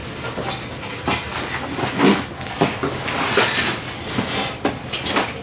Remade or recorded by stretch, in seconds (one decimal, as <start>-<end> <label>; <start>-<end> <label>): 0.0-5.4 recorded